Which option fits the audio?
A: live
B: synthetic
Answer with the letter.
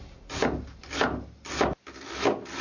A